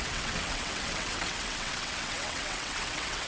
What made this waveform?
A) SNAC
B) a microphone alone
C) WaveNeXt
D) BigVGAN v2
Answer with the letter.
C